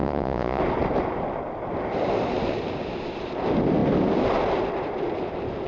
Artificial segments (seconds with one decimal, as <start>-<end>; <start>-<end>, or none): 0.0-0.6